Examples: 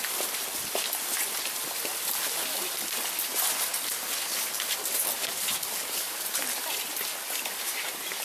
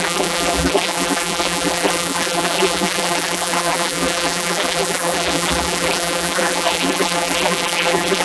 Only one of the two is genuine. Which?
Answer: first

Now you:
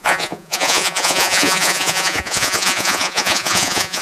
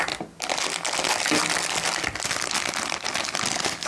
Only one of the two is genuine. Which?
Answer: second